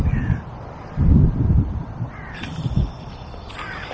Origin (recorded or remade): remade